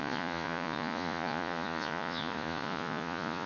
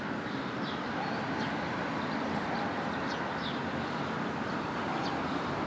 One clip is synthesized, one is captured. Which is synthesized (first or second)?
first